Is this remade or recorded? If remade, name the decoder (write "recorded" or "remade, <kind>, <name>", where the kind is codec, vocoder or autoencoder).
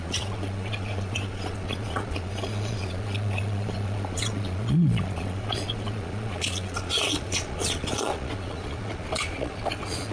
remade, vocoder, Vocos